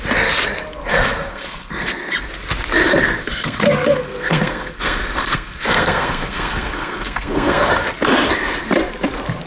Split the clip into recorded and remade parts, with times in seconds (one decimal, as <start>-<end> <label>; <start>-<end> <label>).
0.0-0.9 recorded; 0.9-1.9 remade; 1.9-3.2 recorded; 3.2-7.7 remade; 7.7-9.5 recorded